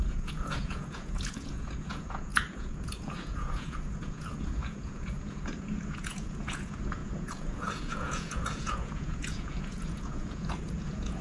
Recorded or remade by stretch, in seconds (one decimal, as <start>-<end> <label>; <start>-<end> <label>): 0.0-11.2 remade